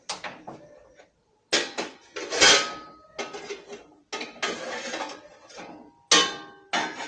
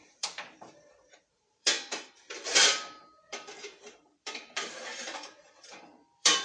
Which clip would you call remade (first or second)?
second